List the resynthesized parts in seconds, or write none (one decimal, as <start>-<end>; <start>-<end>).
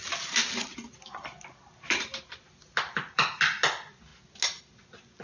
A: none